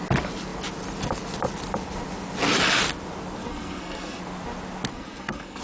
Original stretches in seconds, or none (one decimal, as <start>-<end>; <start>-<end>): 0.0-3.4; 4.2-4.9